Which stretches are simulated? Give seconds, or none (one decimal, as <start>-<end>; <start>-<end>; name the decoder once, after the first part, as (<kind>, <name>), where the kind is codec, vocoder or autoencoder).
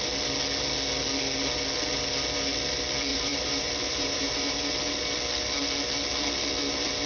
3.1-4.5 (vocoder, BigVGAN v2)